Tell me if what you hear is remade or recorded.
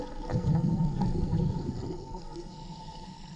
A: remade